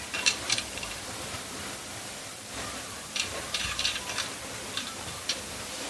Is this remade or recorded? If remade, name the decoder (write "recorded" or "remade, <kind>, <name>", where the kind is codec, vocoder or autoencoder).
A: remade, vocoder, BigVGAN v2